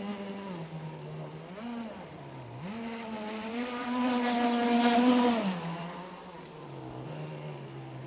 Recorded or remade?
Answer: recorded